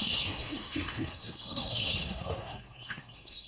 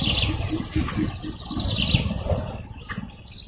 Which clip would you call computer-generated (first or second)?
first